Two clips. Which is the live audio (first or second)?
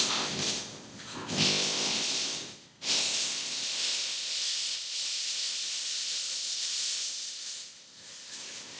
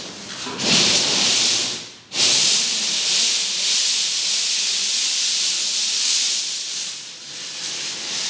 second